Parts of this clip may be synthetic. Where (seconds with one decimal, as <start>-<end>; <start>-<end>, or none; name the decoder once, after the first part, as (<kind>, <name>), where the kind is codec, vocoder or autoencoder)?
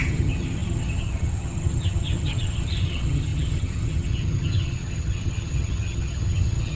0.0-6.7 (vocoder, HiFi-GAN)